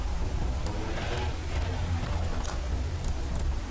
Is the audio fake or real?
real